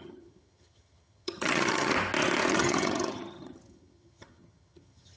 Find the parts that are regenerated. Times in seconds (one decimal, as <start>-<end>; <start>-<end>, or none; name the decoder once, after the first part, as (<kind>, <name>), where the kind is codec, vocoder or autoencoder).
0.0-1.9 (vocoder, HiFi-GAN); 2.5-5.2